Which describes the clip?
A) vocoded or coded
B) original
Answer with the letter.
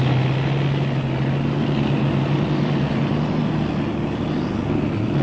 B